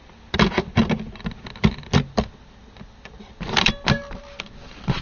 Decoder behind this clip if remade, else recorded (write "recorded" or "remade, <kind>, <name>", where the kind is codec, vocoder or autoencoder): recorded